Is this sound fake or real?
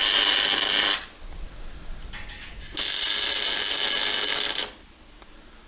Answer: real